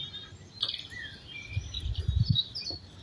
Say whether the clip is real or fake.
real